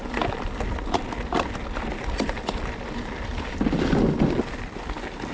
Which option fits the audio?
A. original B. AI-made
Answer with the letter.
A